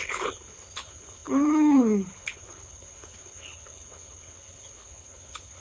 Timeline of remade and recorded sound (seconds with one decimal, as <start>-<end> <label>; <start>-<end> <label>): 0.0-5.6 remade